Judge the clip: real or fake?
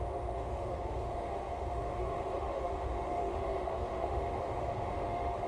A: fake